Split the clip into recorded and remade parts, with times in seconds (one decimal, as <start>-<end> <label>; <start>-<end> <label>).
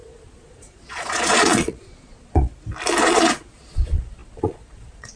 0.0-2.5 remade; 2.5-3.0 recorded; 3.0-5.2 remade